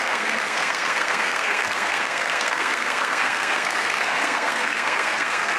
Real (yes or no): no